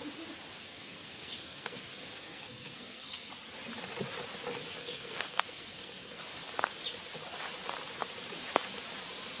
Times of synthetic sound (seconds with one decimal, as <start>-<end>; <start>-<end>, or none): 0.6-3.3; 4.8-6.2